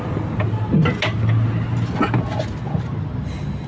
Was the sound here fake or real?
real